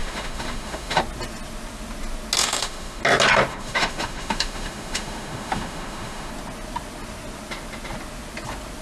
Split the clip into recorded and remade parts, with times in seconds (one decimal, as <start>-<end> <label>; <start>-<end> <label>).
0.0-1.0 remade; 1.0-2.4 recorded; 2.4-3.0 remade; 3.0-3.5 recorded; 3.5-6.3 remade; 6.3-8.8 recorded